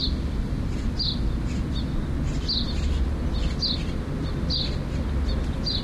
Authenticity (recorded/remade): recorded